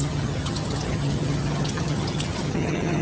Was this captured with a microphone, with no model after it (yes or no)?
no